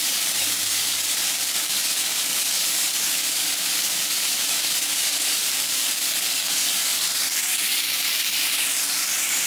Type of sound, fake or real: fake